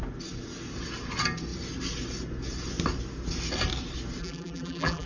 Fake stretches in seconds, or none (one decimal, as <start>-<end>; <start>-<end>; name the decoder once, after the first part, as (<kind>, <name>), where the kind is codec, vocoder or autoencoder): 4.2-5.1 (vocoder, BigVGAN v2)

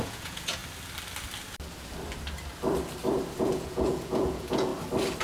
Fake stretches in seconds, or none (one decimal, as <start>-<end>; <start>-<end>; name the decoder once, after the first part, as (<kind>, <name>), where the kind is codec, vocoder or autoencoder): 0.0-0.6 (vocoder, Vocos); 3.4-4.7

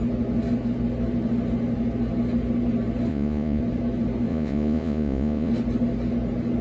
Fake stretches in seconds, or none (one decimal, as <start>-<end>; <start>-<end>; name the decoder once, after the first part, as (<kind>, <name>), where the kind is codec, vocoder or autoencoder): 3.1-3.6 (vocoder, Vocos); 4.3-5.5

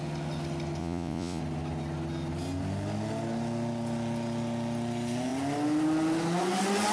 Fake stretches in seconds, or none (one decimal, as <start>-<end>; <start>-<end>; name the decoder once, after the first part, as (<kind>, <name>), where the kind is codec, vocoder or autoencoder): 0.8-1.4 (vocoder, Vocos)

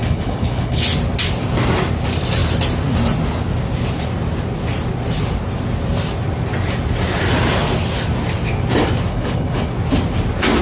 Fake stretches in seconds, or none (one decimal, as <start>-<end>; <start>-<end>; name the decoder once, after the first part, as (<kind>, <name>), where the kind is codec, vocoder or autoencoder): 0.0-0.8 (codec, HILCodec); 9.1-9.7

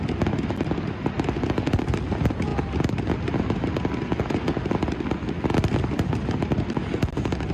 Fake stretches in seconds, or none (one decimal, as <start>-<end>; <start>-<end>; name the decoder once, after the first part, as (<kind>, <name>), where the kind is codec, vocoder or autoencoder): none

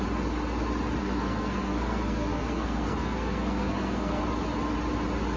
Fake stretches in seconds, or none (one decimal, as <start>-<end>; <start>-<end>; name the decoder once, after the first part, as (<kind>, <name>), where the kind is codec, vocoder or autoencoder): 1.0-4.2 (codec, SNAC)

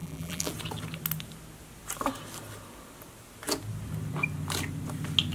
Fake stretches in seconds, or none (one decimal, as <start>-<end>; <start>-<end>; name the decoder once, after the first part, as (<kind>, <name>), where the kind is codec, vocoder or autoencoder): 0.0-0.5 (vocoder, BigVGAN v2)